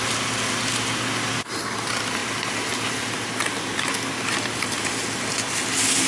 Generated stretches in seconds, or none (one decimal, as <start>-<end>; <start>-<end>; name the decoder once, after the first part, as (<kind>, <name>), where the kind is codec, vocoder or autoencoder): none